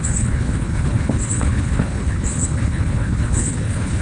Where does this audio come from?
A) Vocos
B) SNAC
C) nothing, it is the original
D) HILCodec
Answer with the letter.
D